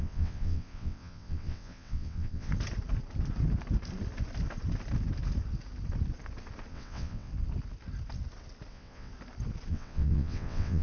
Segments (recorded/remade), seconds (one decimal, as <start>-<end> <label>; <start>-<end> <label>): 0.0-2.5 remade; 2.5-6.7 recorded; 6.7-7.3 remade; 7.3-8.7 recorded; 8.7-9.1 remade; 9.1-9.7 recorded; 9.7-10.8 remade